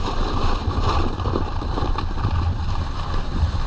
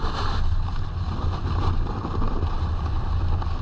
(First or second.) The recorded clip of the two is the second